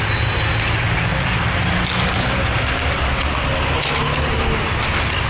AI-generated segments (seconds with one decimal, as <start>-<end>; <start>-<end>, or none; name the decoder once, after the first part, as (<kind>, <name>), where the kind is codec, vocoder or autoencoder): none